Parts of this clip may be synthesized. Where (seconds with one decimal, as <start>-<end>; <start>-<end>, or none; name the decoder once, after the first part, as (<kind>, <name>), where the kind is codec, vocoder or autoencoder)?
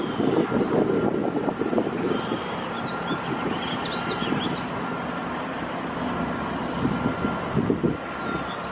1.2-3.2 (vocoder, BigVGAN v2)